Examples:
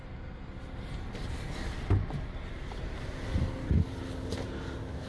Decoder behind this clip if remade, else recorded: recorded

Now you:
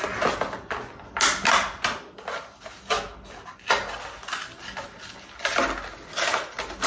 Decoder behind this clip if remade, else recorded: recorded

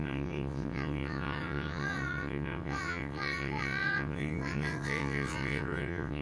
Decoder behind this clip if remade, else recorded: remade, vocoder, WaveNeXt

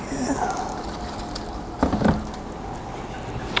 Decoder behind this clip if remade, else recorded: recorded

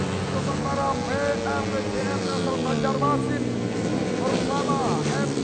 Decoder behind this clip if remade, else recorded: recorded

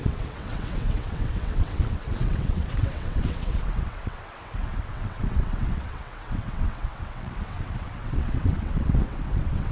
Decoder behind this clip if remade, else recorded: remade, vocoder, WaveNeXt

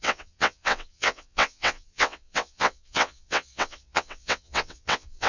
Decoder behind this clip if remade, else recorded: remade, vocoder, WaveNeXt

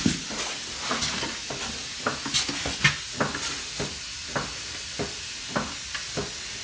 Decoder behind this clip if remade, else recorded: recorded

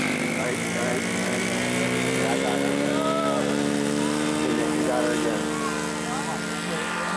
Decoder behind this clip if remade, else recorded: recorded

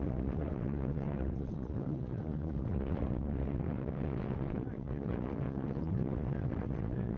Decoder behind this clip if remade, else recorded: remade, vocoder, WaveNeXt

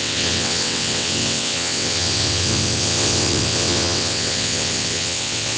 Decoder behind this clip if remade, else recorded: remade, vocoder, WaveNeXt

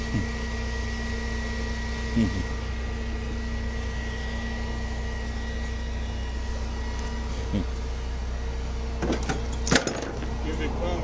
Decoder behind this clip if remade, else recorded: recorded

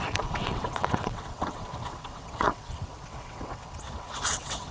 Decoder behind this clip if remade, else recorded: remade, vocoder, WaveNeXt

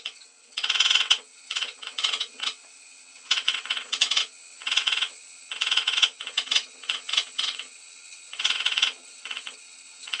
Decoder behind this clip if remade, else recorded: remade, vocoder, WaveNeXt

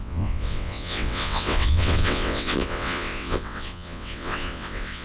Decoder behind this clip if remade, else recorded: remade, vocoder, WaveNeXt